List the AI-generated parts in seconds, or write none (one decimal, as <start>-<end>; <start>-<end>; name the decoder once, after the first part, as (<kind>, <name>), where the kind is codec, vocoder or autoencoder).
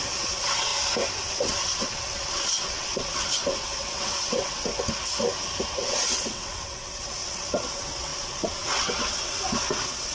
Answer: 0.0-0.7 (vocoder, WaveNeXt); 1.2-4.7; 5.7-10.1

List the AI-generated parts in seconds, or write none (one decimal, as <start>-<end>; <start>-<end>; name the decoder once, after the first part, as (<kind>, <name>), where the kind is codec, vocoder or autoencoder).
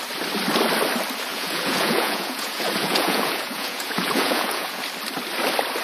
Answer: 1.3-4.8 (vocoder, Vocos)